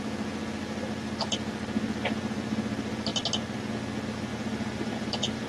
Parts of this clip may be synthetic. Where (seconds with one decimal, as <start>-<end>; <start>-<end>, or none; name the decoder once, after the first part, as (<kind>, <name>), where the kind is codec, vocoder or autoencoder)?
4.3-5.5 (vocoder, BigVGAN v2)

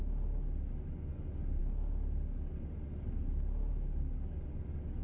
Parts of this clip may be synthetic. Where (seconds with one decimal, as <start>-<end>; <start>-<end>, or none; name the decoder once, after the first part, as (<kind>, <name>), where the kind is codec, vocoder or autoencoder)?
none

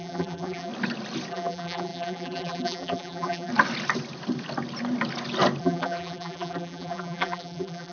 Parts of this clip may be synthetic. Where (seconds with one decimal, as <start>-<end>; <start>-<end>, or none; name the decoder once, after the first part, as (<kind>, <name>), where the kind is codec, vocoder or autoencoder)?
0.0-0.7 (vocoder, BigVGAN v2); 1.3-3.5; 5.6-7.9

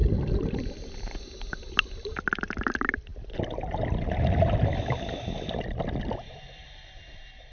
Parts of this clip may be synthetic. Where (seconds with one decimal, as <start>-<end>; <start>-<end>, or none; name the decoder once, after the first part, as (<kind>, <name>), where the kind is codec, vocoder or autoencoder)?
none

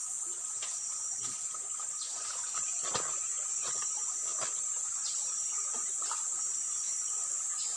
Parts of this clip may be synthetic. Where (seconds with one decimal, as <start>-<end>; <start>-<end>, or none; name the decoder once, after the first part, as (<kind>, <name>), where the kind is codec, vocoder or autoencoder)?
none

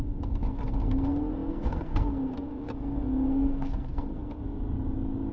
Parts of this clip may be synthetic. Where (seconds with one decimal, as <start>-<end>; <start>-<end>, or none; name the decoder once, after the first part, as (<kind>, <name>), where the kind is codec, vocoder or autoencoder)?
0.0-4.4 (codec, SNAC)